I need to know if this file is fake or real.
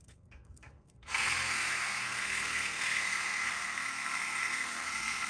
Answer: fake